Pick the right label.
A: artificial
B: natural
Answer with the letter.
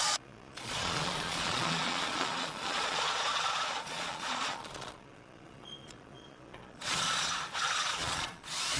A